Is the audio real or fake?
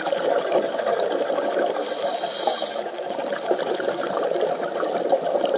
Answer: real